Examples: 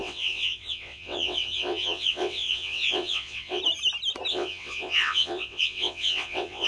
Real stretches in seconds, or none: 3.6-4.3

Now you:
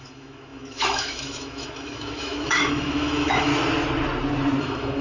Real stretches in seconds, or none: 3.5-4.6

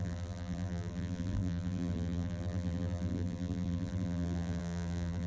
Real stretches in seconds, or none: none

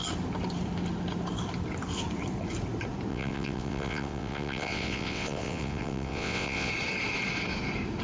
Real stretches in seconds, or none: 0.0-3.1; 6.7-8.0